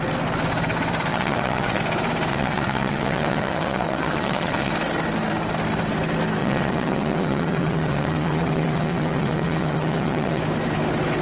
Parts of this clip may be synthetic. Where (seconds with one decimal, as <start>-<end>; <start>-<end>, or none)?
1.1-1.8; 2.3-4.7; 6.4-10.4